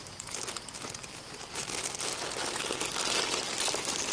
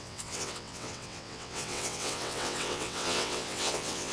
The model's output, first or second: second